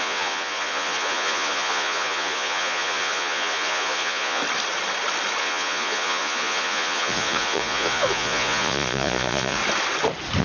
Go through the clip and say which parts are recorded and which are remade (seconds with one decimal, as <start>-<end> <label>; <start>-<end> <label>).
0.0-4.4 remade; 4.4-5.4 recorded; 5.4-9.6 remade; 9.6-10.4 recorded